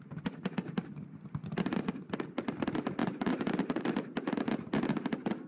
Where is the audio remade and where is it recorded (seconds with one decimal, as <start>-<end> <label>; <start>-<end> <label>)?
0.0-3.0 recorded; 3.0-3.8 remade; 3.8-5.5 recorded